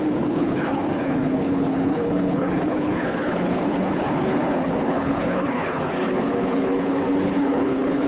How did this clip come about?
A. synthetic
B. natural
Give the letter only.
A